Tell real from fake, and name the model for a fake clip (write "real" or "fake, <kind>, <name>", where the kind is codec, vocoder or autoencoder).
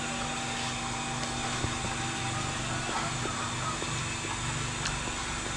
real